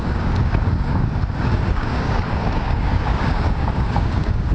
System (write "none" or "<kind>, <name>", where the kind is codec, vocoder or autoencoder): codec, DAC